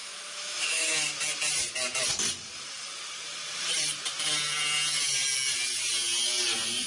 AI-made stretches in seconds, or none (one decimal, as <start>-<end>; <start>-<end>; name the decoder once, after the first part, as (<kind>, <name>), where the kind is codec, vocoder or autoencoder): 0.0-0.9 (autoencoder, DAC-VAE)